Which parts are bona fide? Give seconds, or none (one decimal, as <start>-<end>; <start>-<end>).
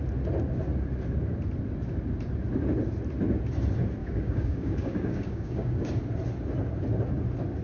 0.0-4.0; 5.9-7.6